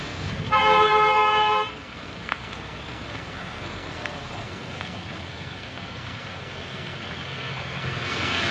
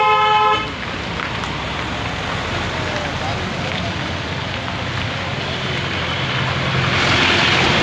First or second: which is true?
second